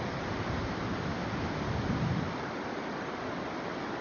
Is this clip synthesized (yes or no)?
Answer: yes